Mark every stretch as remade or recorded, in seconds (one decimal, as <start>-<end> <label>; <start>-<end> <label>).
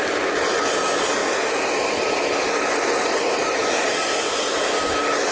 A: 0.0-5.3 recorded